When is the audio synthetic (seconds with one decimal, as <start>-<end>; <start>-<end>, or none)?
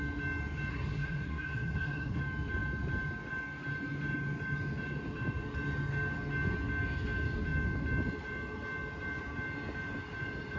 0.7-2.2